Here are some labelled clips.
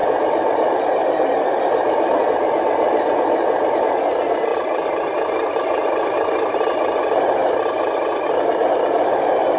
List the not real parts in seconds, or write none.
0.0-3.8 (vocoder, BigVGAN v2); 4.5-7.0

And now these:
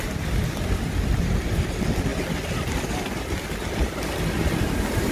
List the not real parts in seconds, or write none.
none

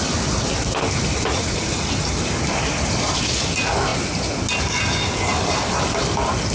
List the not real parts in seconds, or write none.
1.3-1.9 (vocoder, Vocos)

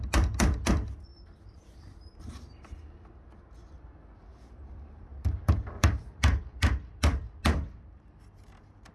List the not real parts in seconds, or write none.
1.1-2.8 (vocoder, BigVGAN v2); 4.3-6.7

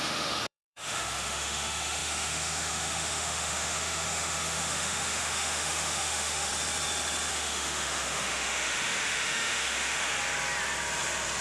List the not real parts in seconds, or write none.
0.0-6.5 (autoencoder, DAC-VAE); 7.3-10.1

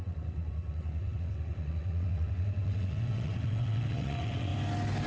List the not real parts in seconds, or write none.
0.0-4.5 (vocoder, WaveNeXt)